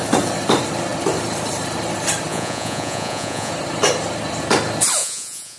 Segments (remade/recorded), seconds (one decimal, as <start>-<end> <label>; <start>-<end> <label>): 0.0-2.3 recorded; 2.3-3.5 remade; 3.5-5.0 recorded; 5.0-5.6 remade